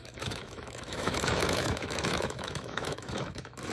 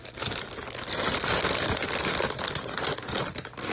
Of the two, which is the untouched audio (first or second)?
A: second